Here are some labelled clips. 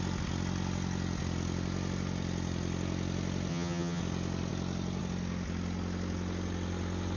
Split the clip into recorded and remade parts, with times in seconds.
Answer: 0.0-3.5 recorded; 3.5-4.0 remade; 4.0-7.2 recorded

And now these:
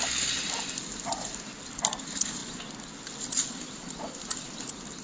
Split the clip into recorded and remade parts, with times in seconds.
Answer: 0.0-5.0 recorded

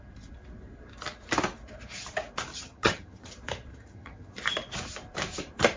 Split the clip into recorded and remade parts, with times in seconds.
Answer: 0.0-2.5 recorded; 2.5-3.3 remade; 3.3-3.7 recorded; 3.7-4.3 remade; 4.3-5.8 recorded

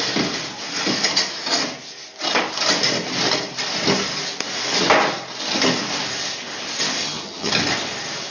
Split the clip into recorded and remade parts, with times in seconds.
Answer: 0.0-7.0 recorded; 7.0-7.5 remade; 7.5-8.3 recorded

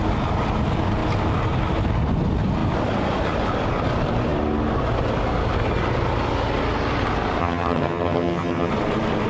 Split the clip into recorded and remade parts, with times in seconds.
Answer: 0.0-7.4 recorded; 7.4-8.7 remade; 8.7-9.3 recorded

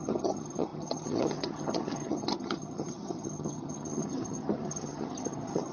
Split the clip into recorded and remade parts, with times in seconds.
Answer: 0.0-5.7 remade

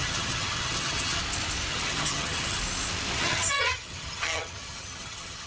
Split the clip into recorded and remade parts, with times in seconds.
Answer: 0.0-1.2 remade; 1.2-1.7 recorded; 1.7-2.6 remade; 2.6-3.2 recorded; 3.2-5.5 remade